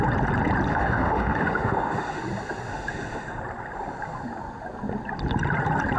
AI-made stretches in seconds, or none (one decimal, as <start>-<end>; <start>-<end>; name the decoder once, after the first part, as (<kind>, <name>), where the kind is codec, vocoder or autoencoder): 0.7-2.2 (autoencoder, DAC-VAE); 2.7-3.4